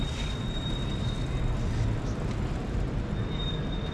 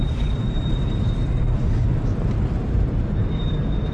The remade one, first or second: second